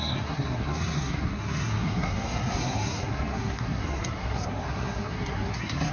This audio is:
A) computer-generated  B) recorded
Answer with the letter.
A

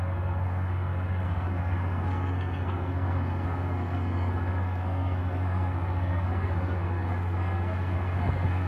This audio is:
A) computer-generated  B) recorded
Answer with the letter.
A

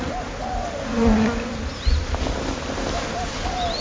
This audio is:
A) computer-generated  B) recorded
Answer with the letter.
B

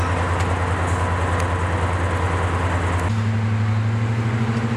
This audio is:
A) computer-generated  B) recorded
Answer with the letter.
B